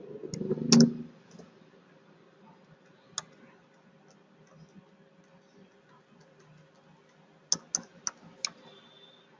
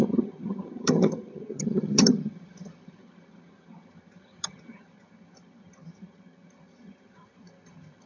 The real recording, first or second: first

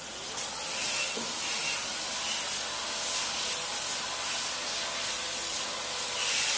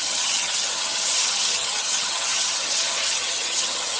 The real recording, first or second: first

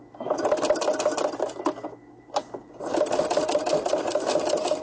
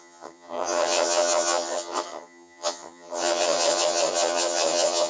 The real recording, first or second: first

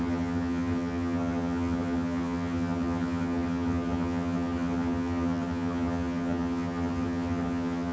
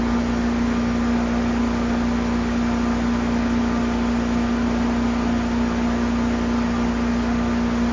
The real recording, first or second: second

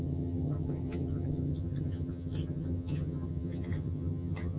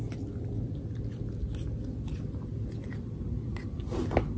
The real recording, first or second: second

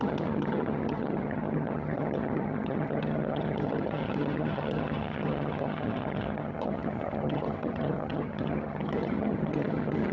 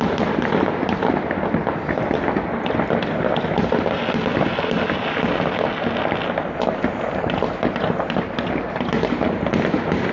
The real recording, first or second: second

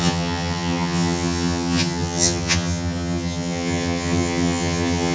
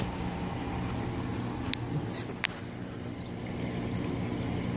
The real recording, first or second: second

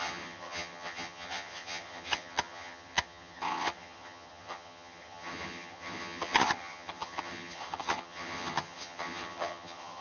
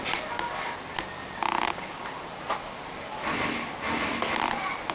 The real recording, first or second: second